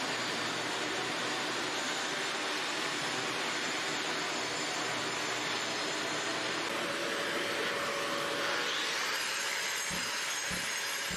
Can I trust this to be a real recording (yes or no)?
yes